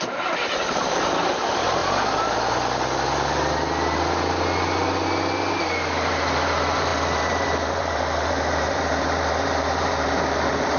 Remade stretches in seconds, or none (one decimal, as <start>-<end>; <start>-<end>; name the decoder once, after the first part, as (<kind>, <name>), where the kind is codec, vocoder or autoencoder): 0.0-1.8 (vocoder, BigVGAN v2); 5.6-10.8